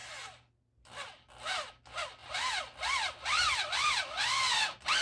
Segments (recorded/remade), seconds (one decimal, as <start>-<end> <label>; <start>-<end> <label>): 0.0-5.0 recorded